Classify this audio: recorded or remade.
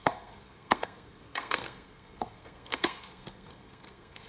remade